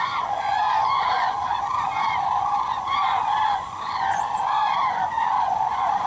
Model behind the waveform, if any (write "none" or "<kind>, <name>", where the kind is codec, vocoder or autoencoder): vocoder, Vocos